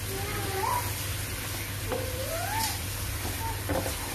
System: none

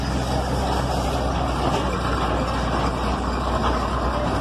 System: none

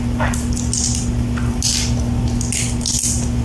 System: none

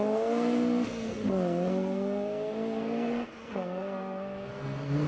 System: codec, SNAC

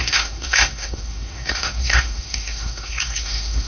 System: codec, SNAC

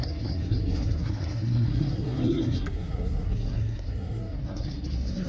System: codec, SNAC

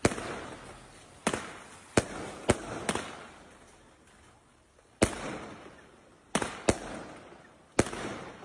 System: none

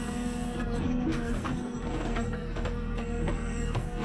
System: codec, SNAC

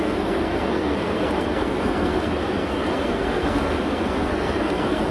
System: codec, SNAC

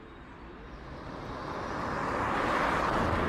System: none